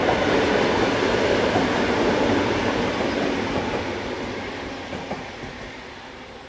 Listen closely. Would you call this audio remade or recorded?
recorded